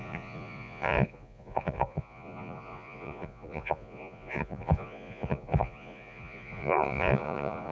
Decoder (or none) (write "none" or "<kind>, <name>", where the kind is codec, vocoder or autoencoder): vocoder, Vocos